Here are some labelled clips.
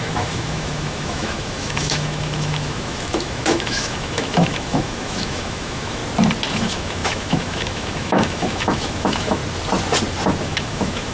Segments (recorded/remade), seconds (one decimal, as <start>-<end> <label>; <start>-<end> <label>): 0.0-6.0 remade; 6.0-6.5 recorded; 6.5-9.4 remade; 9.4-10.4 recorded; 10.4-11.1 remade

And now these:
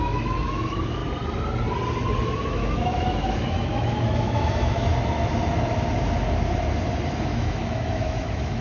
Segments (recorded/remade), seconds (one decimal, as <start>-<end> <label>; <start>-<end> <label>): 0.0-1.0 remade; 1.0-2.2 recorded; 2.2-4.9 remade; 4.9-7.2 recorded; 7.2-8.6 remade

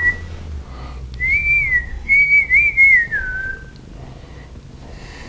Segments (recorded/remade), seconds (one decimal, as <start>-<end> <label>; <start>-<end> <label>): 0.0-1.9 recorded; 1.9-2.4 remade; 2.4-5.3 recorded